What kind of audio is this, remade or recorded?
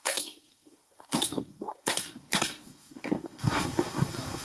remade